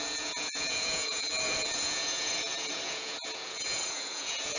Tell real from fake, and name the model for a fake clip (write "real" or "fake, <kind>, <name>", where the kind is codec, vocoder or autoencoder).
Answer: fake, vocoder, Vocos